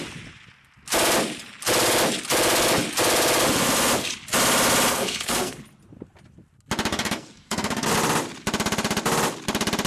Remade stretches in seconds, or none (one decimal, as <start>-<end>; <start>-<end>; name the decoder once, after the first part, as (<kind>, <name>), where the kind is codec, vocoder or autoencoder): 4.9-5.6 (codec, SNAC); 6.9-7.9